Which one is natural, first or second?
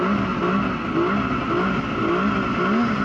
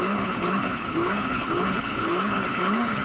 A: first